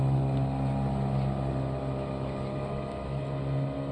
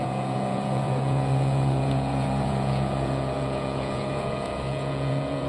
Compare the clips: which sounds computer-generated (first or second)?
second